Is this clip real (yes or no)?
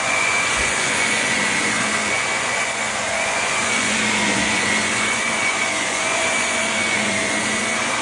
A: no